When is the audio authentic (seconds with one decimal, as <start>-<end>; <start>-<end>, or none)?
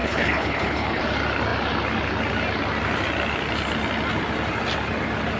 1.0-5.4